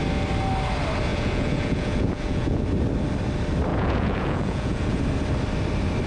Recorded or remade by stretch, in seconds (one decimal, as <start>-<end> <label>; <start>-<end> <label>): 0.0-1.1 recorded; 1.1-2.6 remade; 2.6-3.7 recorded; 3.7-5.0 remade; 5.0-6.1 recorded

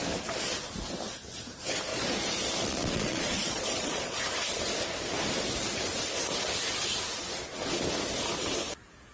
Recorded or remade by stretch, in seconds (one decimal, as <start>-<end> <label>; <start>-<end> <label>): 0.0-1.9 recorded; 1.9-4.2 remade; 4.2-9.1 recorded